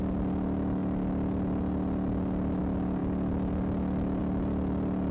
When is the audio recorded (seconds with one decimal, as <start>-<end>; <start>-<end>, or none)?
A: 0.0-5.1